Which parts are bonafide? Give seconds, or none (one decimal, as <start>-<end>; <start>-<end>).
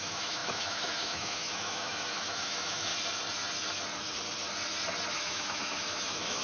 2.9-5.1